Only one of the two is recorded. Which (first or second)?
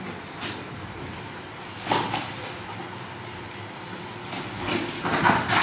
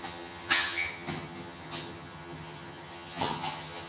first